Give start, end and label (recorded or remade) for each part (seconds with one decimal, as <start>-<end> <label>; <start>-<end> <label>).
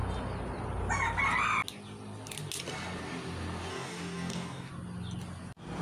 0.0-3.7 recorded; 3.7-4.7 remade; 4.7-5.8 recorded